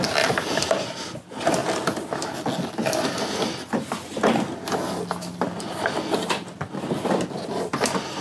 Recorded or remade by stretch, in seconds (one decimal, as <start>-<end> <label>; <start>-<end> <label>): 0.0-8.2 recorded